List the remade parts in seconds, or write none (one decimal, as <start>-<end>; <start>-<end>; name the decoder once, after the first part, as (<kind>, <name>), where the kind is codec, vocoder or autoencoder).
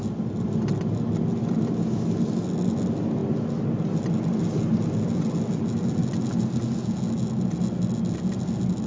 none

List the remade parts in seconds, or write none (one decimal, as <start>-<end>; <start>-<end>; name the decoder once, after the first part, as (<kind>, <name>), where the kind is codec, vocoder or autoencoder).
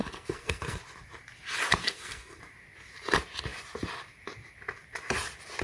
0.0-0.8 (codec, SNAC); 1.8-2.4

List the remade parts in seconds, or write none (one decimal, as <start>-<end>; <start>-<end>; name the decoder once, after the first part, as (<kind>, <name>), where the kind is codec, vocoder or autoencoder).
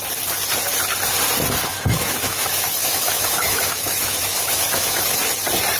1.7-5.2 (autoencoder, DAC-VAE)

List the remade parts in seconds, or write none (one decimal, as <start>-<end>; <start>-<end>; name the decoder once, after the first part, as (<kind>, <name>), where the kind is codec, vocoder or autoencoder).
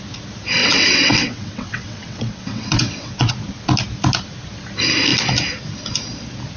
0.6-3.3 (vocoder, WaveNeXt)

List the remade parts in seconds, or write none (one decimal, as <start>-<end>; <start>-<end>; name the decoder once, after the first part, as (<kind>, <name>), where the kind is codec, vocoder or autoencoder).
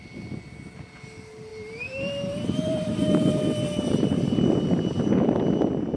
1.5-5.1 (vocoder, BigVGAN v2)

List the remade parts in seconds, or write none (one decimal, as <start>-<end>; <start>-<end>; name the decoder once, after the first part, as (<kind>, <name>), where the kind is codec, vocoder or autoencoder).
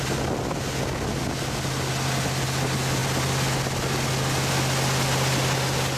none